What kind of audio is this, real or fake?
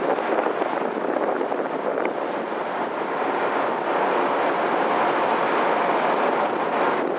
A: real